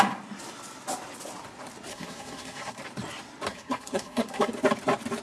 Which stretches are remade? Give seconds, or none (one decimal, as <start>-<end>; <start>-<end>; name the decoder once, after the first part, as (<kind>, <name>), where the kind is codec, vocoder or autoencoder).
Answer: 1.9-2.8 (codec, SNAC); 3.5-4.5